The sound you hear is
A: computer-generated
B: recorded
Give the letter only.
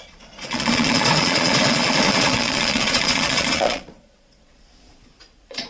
A